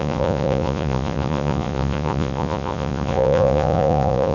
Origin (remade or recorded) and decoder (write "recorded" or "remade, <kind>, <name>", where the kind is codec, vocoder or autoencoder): remade, vocoder, Vocos